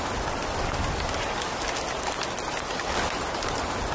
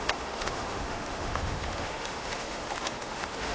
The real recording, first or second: first